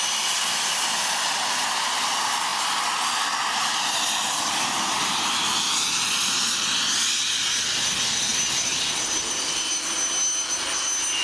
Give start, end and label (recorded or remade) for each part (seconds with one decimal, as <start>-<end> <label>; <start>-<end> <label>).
0.0-11.2 recorded